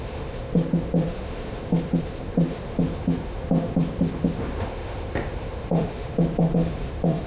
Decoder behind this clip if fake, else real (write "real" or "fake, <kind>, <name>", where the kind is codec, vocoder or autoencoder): fake, autoencoder, DAC-VAE